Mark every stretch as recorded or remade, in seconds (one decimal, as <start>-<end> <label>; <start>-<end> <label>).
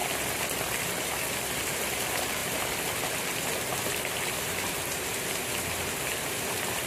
0.0-6.9 recorded